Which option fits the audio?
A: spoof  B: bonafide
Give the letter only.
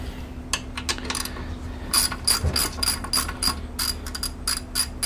B